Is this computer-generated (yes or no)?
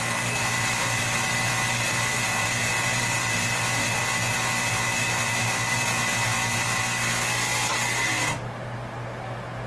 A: no